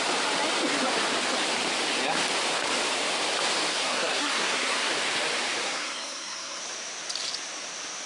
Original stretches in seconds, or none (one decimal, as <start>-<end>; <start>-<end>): 0.0-3.7; 4.9-5.6; 6.6-8.1